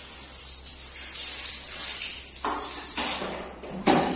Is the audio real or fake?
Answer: fake